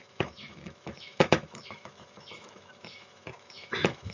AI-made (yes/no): yes